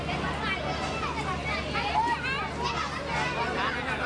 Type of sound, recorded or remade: recorded